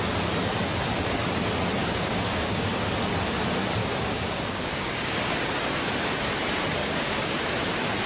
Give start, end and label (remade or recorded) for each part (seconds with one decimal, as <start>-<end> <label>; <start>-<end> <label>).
0.0-1.8 recorded; 1.8-2.9 remade; 2.9-3.8 recorded; 3.8-5.3 remade; 5.3-6.8 recorded; 6.8-7.3 remade; 7.3-8.1 recorded